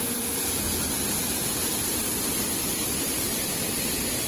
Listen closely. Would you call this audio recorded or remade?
recorded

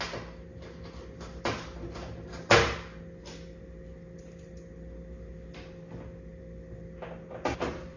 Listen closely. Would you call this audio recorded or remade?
recorded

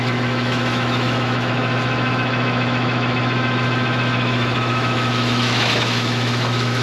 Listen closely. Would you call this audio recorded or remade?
remade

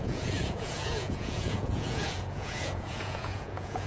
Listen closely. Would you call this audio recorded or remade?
remade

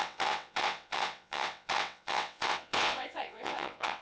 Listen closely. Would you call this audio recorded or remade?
remade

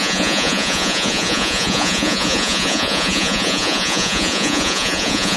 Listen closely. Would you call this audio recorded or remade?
remade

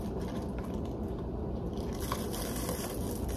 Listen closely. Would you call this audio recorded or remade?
remade